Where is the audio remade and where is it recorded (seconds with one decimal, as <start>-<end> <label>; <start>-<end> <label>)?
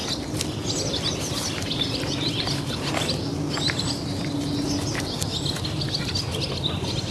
0.0-2.9 remade; 2.9-7.1 recorded